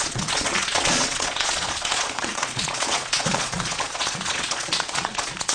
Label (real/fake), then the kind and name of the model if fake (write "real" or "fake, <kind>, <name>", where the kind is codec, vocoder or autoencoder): fake, vocoder, Vocos